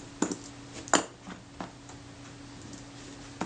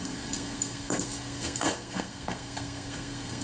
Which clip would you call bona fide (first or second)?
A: first